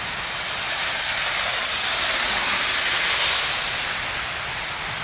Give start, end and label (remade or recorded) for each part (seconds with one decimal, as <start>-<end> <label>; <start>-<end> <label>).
0.0-5.0 recorded